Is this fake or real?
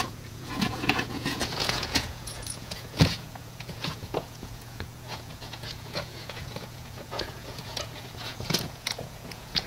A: fake